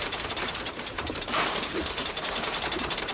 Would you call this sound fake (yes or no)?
yes